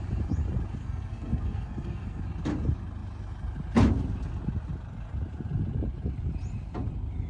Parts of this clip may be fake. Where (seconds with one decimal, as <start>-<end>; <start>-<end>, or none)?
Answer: 0.8-2.2